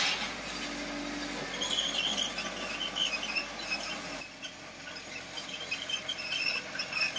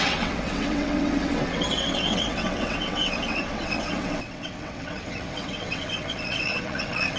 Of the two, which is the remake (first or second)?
second